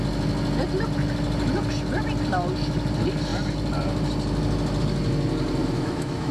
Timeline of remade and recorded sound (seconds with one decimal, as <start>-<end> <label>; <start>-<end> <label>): 0.0-5.6 recorded; 5.6-6.3 remade